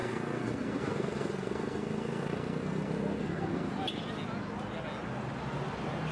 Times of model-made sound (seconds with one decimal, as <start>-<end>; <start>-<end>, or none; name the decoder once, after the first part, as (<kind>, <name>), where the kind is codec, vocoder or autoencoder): 0.0-3.7 (codec, SNAC)